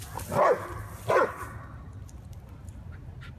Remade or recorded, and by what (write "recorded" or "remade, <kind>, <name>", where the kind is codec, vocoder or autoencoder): recorded